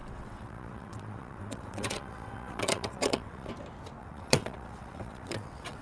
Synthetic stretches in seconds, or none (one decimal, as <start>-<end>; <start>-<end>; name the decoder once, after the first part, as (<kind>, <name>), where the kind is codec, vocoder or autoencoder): 0.0-3.5 (vocoder, WaveNeXt); 4.0-5.8